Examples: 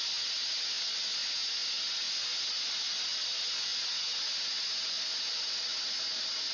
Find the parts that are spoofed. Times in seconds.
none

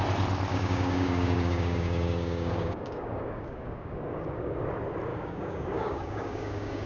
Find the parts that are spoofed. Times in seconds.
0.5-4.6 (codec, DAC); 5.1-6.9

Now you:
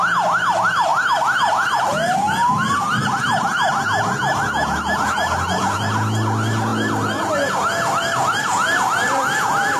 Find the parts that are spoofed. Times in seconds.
none